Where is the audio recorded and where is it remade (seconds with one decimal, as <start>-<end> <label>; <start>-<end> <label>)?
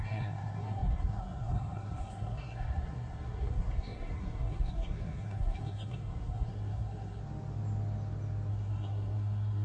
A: 0.0-7.2 remade; 7.2-8.5 recorded; 8.5-9.6 remade